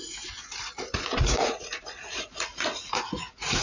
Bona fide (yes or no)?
no